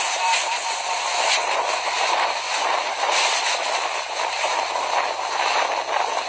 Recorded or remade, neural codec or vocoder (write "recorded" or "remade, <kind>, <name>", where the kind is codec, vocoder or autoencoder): recorded